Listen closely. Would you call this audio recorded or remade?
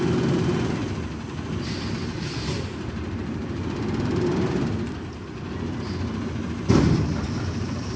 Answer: recorded